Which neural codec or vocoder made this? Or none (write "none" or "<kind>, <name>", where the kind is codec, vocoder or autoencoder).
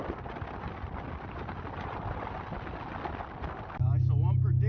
none